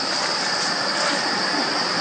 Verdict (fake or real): real